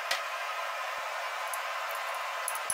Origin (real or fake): real